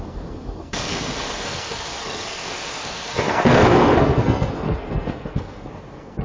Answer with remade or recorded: remade